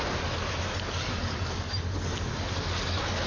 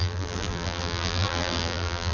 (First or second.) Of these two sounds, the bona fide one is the first